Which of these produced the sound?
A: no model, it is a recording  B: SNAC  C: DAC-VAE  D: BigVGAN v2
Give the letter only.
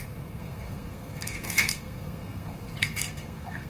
B